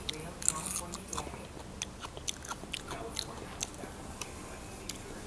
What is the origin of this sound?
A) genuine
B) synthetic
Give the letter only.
A